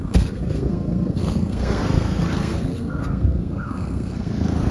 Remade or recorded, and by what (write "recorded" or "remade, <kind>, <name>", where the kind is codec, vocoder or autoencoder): remade, codec, SNAC